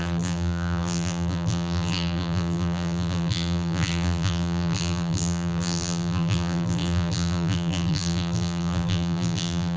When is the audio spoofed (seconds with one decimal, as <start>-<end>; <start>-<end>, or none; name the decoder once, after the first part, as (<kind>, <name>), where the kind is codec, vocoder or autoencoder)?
0.0-9.8 (vocoder, BigVGAN v2)